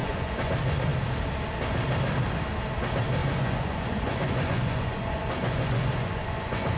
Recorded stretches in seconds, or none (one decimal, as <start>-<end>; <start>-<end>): 0.5-3.2